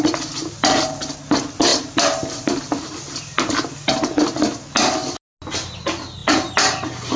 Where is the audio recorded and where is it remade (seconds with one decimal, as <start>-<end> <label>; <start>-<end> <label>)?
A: 0.0-7.2 recorded

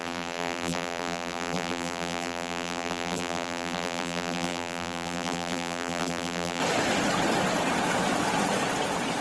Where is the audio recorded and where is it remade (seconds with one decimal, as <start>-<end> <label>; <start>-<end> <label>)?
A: 0.0-6.6 remade; 6.6-9.2 recorded

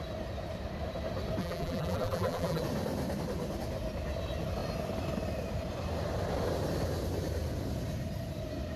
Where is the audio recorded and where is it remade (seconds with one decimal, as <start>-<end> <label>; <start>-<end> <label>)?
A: 0.0-1.4 recorded; 1.4-2.6 remade; 2.6-8.8 recorded

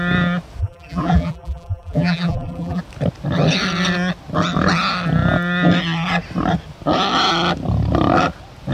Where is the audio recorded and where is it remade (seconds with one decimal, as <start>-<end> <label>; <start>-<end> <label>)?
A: 0.0-0.6 recorded; 0.6-2.8 remade; 2.8-8.7 recorded

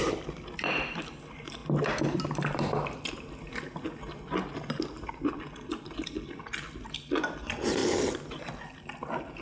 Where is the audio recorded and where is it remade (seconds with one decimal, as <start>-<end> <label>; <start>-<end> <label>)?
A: 0.0-7.8 recorded; 7.8-8.5 remade; 8.5-9.4 recorded

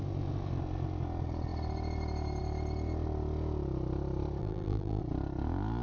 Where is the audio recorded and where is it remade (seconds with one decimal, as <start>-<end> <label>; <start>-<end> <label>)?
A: 0.0-4.4 recorded; 4.4-5.0 remade; 5.0-5.8 recorded